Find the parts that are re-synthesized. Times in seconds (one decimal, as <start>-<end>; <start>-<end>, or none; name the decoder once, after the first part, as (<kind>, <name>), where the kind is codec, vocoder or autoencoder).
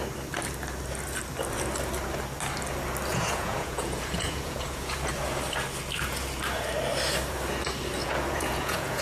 3.1-5.1 (vocoder, Vocos); 8.0-9.0